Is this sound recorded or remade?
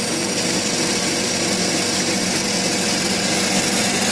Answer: recorded